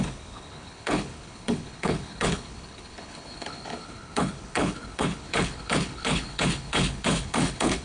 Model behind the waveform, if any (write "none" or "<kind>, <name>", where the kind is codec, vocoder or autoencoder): codec, HILCodec